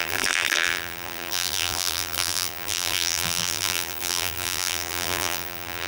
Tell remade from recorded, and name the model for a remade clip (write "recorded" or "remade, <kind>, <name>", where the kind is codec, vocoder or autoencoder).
remade, vocoder, BigVGAN v2